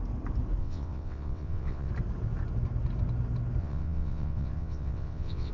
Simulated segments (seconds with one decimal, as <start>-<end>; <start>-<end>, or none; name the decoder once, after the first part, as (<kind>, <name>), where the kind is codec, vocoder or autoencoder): 0.6-1.9 (vocoder, WaveNeXt); 3.6-5.5